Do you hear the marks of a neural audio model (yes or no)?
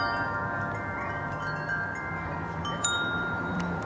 yes